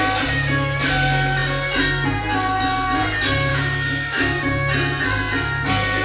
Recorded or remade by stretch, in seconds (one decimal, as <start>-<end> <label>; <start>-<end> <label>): 0.0-3.5 recorded; 3.5-4.4 remade; 4.4-6.0 recorded